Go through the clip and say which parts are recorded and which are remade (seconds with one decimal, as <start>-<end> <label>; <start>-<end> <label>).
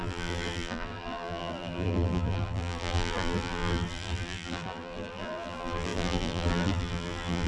0.0-7.5 remade